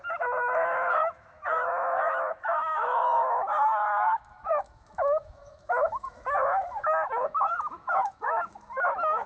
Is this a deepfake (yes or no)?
yes